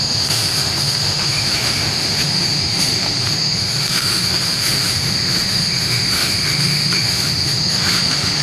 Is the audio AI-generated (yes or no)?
yes